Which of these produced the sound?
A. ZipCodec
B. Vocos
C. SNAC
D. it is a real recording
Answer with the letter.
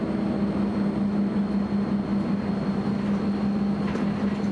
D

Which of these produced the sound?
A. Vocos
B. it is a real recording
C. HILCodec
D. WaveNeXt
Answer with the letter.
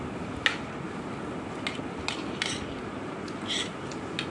B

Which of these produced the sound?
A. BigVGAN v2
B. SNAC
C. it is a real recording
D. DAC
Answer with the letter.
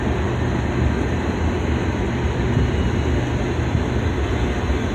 A